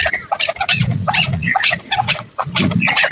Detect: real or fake fake